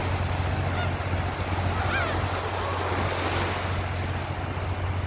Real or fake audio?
real